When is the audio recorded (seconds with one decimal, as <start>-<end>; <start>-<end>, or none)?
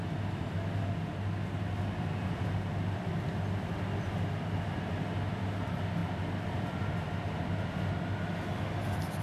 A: 0.0-6.0; 6.8-9.2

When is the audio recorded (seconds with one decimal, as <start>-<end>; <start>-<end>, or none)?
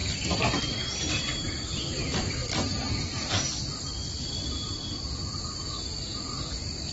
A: 1.1-2.4; 3.3-6.9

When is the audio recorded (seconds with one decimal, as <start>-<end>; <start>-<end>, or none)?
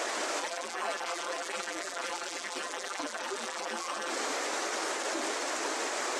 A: 0.0-0.4; 4.1-6.2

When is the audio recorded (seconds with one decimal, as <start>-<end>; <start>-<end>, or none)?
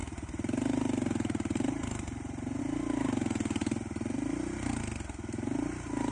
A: 2.6-3.6; 4.8-6.1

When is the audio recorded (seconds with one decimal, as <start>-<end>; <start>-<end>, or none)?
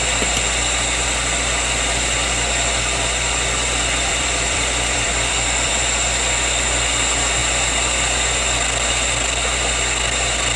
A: 0.0-4.1; 5.7-10.6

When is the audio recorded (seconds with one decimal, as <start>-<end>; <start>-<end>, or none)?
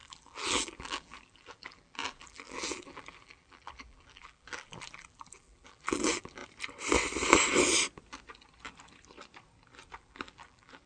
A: 6.4-10.0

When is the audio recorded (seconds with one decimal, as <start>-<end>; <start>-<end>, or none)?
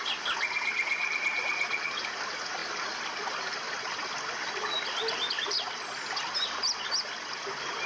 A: 0.0-7.9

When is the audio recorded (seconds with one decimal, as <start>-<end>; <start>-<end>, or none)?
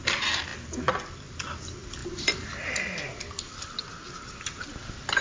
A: 0.0-5.2